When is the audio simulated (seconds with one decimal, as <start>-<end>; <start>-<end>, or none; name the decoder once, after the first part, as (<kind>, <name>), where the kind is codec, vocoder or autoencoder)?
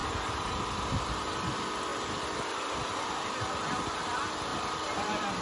0.0-0.6 (vocoder, BigVGAN v2); 1.9-3.0; 4.5-5.0